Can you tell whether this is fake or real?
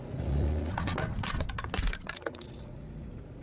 fake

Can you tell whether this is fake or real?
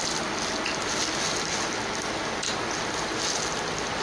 real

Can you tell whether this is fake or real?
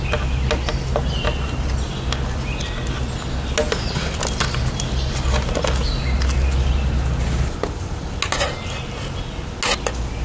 real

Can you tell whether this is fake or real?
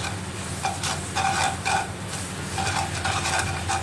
real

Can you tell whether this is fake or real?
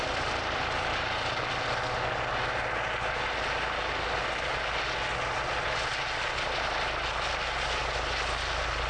real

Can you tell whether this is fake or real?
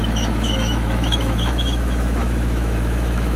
fake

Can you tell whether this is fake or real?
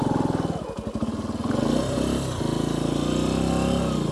real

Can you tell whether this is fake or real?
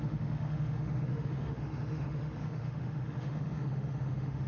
fake